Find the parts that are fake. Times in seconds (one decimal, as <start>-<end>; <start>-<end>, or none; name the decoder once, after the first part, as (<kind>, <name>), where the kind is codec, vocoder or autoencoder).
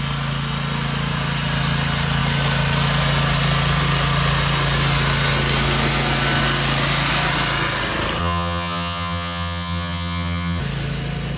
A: 8.2-10.6 (vocoder, HiFi-GAN)